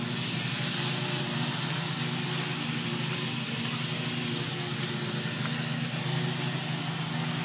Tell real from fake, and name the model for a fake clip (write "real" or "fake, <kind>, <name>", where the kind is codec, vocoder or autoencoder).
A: real